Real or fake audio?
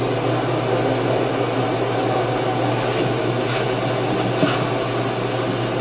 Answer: real